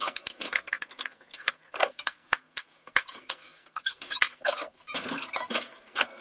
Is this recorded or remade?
remade